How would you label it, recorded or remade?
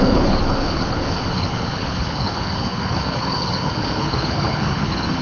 remade